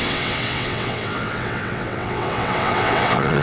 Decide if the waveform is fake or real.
fake